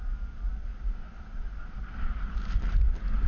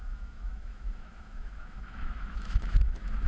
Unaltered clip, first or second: first